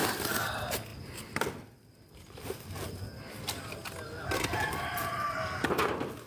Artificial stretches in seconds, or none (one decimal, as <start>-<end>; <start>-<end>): 0.0-0.5